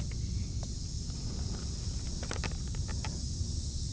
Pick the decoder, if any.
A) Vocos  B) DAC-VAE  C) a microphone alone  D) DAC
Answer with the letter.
C